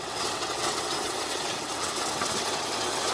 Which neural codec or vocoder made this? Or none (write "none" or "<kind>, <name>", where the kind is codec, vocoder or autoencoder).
vocoder, WaveNeXt